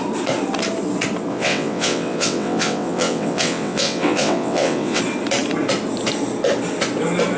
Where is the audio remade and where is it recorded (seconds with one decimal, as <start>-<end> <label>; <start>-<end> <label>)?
0.0-1.3 recorded; 1.3-5.0 remade; 5.0-7.4 recorded